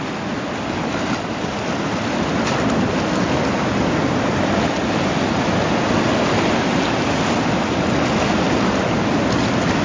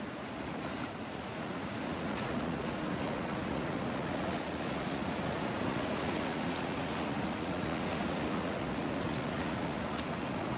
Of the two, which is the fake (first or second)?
second